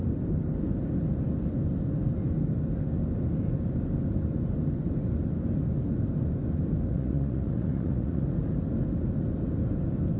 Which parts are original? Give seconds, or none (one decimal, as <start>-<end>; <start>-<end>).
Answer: 0.0-6.9; 8.3-10.2